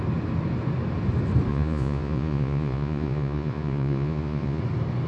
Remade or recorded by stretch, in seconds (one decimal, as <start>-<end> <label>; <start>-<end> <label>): 0.0-1.5 recorded; 1.5-4.6 remade; 4.6-5.1 recorded